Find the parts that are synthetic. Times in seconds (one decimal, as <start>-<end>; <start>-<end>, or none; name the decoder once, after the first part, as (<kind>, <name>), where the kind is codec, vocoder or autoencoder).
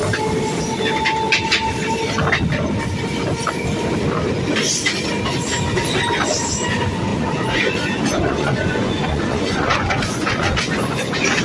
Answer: 7.1-11.4 (vocoder, Vocos)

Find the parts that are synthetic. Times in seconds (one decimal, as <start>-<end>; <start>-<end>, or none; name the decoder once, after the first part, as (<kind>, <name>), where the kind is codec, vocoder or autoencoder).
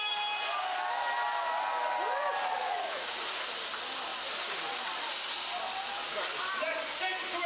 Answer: 2.6-3.4 (vocoder, Vocos)